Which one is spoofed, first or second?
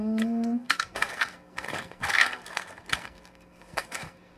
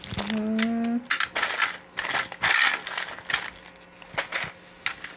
first